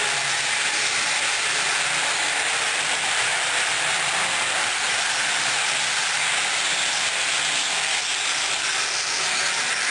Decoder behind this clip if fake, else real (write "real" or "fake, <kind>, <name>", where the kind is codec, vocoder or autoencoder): real